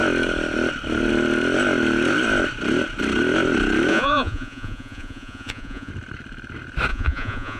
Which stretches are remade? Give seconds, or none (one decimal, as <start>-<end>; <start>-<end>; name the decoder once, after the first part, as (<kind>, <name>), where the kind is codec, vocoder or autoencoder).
3.9-5.9 (vocoder, Vocos); 6.9-7.6